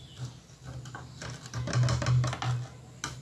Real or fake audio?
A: real